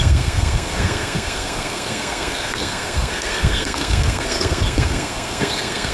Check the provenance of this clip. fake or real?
fake